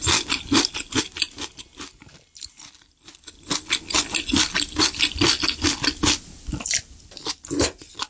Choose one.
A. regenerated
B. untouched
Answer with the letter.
B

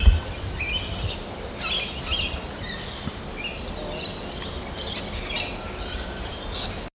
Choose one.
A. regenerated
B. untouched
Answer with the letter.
B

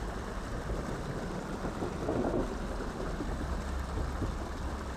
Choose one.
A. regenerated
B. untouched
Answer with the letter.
A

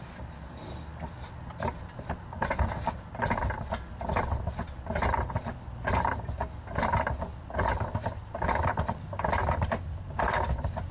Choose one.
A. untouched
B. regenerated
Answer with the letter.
A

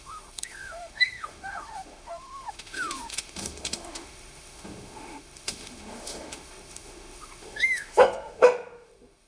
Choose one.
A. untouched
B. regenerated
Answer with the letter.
B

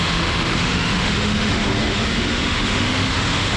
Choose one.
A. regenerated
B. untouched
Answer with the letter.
A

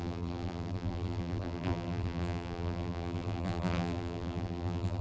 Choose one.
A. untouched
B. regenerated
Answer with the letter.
B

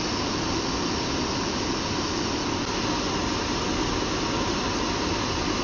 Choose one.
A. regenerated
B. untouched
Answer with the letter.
B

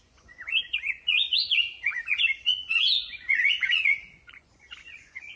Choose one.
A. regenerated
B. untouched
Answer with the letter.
A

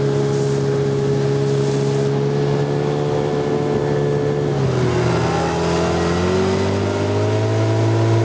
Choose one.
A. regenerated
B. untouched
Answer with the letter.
B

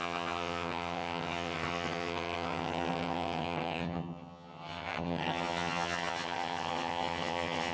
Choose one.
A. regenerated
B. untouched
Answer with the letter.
A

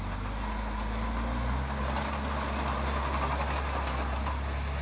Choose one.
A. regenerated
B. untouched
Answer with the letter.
B